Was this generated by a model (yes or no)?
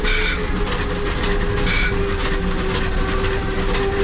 no